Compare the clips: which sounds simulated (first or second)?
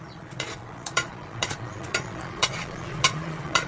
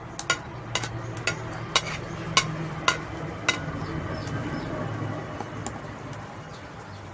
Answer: first